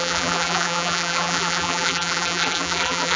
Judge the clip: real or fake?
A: fake